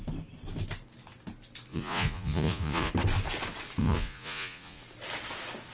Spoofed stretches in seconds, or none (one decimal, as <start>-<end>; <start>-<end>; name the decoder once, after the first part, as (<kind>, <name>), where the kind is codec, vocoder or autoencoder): 1.7-2.9 (vocoder, Vocos); 3.8-4.8